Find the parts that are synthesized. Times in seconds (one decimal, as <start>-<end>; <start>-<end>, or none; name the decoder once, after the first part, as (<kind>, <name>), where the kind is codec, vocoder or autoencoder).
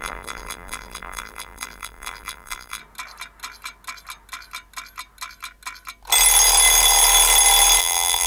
0.0-2.8 (vocoder, BigVGAN v2); 7.8-8.3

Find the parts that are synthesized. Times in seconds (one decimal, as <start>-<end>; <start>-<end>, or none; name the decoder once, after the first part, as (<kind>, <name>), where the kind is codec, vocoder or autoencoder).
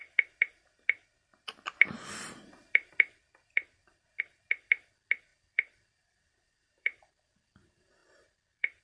5.3-7.1 (vocoder, BigVGAN v2); 8.0-8.8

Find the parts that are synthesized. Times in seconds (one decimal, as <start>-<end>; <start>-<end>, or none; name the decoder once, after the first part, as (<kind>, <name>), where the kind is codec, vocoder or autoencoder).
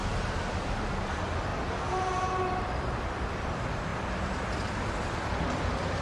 0.0-1.5 (vocoder, BigVGAN v2); 2.6-3.9; 5.3-6.0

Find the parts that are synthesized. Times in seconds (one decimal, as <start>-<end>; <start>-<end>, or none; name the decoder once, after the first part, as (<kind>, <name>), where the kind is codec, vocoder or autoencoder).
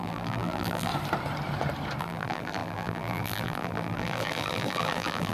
0.0-0.9 (vocoder, BigVGAN v2); 2.0-5.3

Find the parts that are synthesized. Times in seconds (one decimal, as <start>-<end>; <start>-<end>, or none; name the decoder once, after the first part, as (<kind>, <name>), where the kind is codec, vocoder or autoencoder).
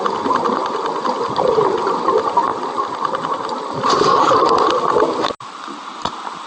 2.5-3.7 (vocoder, BigVGAN v2)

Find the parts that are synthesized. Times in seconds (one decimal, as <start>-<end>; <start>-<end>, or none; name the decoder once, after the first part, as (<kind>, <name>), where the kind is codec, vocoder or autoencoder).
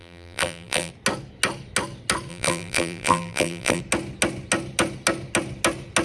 0.0-0.9 (vocoder, BigVGAN v2); 2.3-3.8